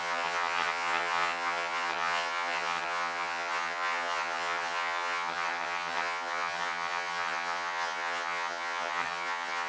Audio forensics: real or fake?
fake